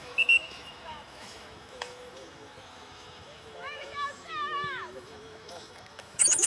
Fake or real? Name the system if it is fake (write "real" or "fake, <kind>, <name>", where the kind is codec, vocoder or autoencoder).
fake, autoencoder, DAC-VAE